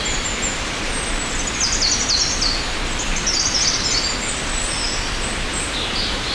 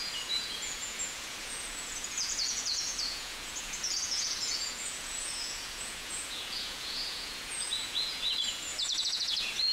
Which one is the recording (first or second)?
first